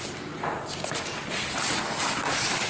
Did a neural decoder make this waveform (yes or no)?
no